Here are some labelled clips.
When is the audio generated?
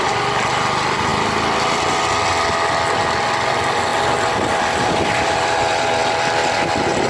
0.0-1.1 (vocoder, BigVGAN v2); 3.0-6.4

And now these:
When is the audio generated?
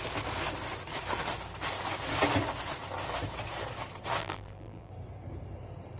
4.2-4.9 (vocoder, BigVGAN v2)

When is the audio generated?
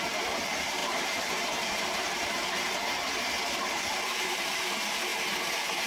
0.0-5.9 (vocoder, BigVGAN v2)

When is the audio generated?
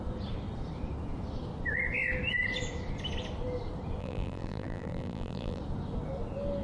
4.0-5.6 (vocoder, BigVGAN v2)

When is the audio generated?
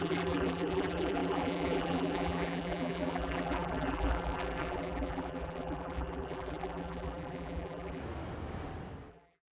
0.0-8.0 (vocoder, BigVGAN v2); 9.1-9.5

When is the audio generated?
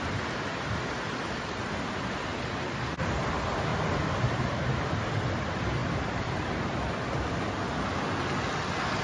3.7-4.5 (vocoder, BigVGAN v2); 5.8-6.8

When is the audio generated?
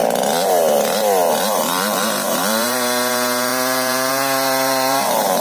1.3-5.4 (vocoder, BigVGAN v2)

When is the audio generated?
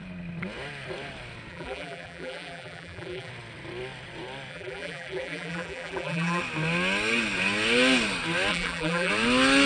1.5-3.3 (vocoder, BigVGAN v2); 4.5-6.4; 8.5-9.1